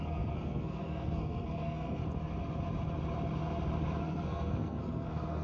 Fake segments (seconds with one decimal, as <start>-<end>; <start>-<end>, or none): 0.0-2.0; 4.0-5.4